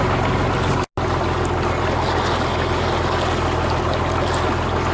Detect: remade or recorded recorded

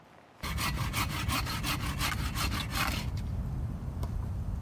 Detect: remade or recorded recorded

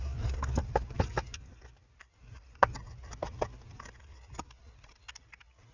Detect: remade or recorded recorded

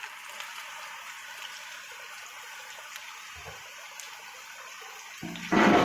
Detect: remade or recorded recorded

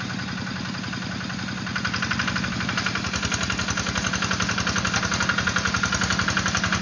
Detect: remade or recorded recorded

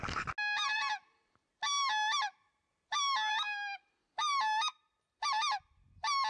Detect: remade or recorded recorded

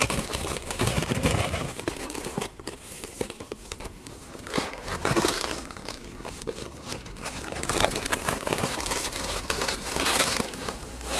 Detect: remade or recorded remade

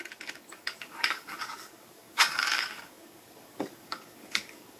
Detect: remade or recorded remade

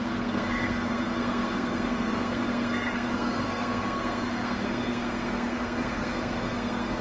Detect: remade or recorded remade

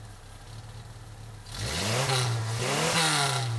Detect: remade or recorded recorded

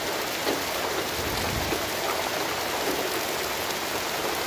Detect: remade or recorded recorded